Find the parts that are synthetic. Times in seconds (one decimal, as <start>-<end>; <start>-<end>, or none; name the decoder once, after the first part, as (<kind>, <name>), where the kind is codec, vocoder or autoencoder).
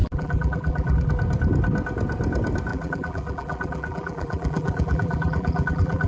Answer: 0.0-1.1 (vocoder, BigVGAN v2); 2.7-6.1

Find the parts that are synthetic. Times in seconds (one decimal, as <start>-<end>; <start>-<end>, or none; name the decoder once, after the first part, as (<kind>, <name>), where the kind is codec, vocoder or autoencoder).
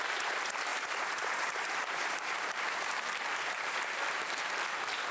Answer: 0.7-3.8 (vocoder, BigVGAN v2)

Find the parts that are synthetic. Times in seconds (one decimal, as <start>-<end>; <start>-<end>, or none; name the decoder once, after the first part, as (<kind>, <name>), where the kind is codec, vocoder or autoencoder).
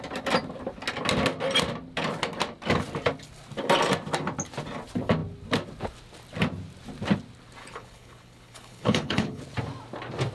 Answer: 7.6-9.4 (codec, HILCodec)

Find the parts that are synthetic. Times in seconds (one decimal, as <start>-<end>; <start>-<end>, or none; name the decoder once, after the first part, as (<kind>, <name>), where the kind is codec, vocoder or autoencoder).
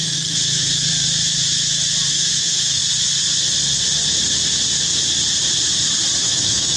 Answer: 0.0-0.9 (autoencoder, DAC-VAE); 2.1-2.8; 6.2-6.8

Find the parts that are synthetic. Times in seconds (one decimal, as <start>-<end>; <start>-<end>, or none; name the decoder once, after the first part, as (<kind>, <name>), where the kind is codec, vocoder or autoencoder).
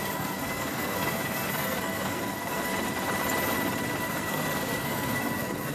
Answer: 0.0-2.7 (codec, SNAC); 4.0-5.7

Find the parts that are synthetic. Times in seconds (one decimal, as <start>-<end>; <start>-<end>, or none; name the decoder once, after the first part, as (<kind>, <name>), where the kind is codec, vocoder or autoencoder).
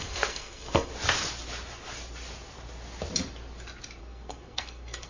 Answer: 0.0-0.9 (codec, SNAC); 4.0-5.1